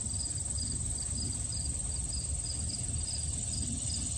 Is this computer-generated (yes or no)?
no